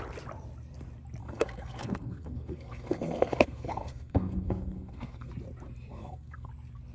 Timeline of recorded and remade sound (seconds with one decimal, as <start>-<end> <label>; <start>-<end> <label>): 0.0-1.2 recorded; 1.2-5.3 remade; 5.3-5.9 recorded; 5.9-6.5 remade; 6.5-6.9 recorded